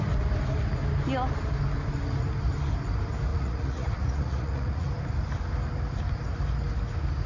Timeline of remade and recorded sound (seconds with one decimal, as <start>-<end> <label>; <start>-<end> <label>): 0.0-3.3 recorded; 3.3-4.9 remade; 4.9-7.3 recorded